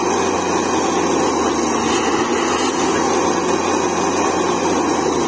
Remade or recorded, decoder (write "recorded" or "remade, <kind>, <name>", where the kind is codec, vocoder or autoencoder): recorded